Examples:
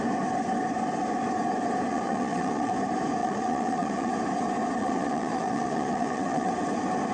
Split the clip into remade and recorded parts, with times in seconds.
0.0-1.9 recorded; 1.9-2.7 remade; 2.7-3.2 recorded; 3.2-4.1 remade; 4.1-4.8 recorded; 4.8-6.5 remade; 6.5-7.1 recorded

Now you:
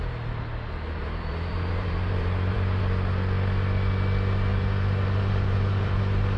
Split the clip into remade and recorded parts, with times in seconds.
0.0-1.0 recorded; 1.0-2.8 remade; 2.8-4.5 recorded; 4.5-6.0 remade; 6.0-6.4 recorded

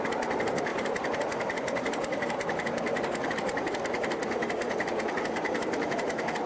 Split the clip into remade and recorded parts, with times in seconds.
0.0-6.5 recorded

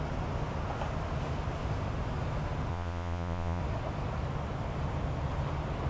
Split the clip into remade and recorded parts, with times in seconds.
0.0-2.7 recorded; 2.7-3.6 remade; 3.6-5.9 recorded

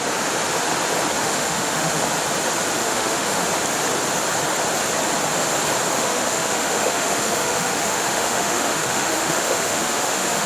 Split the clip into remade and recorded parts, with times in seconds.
0.0-1.2 recorded; 1.2-2.0 remade; 2.0-2.8 recorded; 2.8-3.4 remade; 3.4-5.9 recorded; 5.9-10.5 remade

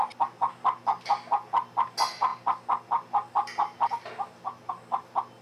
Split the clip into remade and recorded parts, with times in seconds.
0.0-5.4 recorded

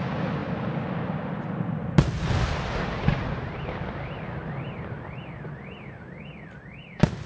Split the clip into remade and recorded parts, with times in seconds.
0.0-7.3 recorded

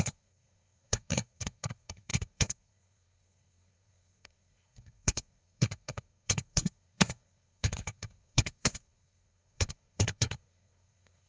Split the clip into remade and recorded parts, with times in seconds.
0.0-11.3 remade